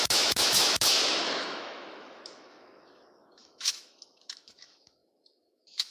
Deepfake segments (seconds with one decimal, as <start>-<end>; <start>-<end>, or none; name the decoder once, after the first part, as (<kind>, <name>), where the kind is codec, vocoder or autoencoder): 0.0-5.9 (autoencoder, DAC-VAE)